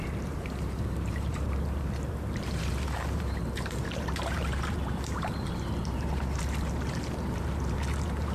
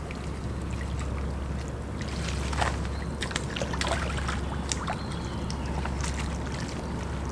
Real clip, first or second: second